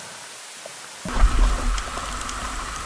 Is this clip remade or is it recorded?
recorded